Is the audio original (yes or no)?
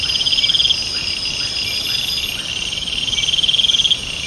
yes